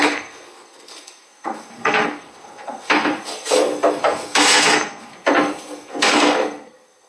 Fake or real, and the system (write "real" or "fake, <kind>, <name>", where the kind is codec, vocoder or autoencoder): fake, codec, SNAC